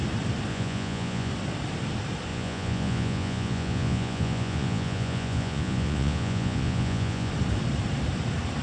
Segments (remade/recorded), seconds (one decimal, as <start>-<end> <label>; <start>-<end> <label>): 0.0-0.5 recorded; 0.5-1.3 remade; 1.3-2.3 recorded; 2.3-7.3 remade; 7.3-8.6 recorded